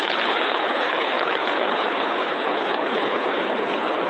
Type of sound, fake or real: fake